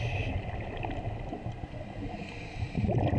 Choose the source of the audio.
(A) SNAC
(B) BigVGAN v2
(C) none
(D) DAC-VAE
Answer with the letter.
C